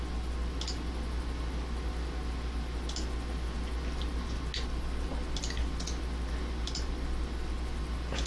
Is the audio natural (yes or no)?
yes